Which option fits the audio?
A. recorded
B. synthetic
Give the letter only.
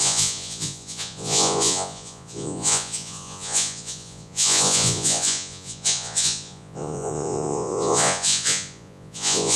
B